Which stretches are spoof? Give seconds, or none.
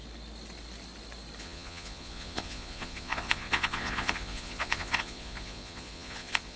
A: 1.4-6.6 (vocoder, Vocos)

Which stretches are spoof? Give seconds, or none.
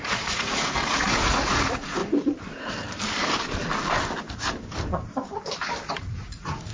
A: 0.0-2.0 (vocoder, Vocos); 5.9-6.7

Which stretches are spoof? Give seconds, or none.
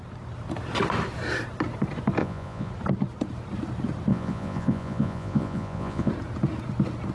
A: 2.2-2.7 (vocoder, Vocos); 4.1-6.1